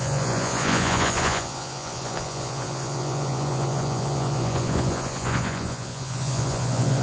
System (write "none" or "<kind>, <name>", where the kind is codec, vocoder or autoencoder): vocoder, Vocos